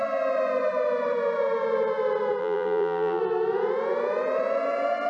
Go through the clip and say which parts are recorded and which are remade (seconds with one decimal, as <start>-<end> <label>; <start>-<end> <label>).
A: 0.0-2.4 recorded; 2.4-3.2 remade; 3.2-5.1 recorded

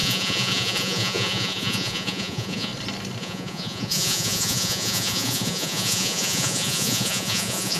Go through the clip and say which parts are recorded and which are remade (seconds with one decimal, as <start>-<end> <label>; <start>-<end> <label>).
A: 0.0-2.7 remade; 2.7-3.2 recorded; 3.2-7.8 remade